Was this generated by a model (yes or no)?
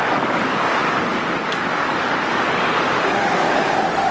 yes